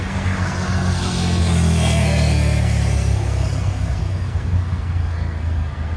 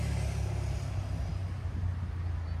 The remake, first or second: first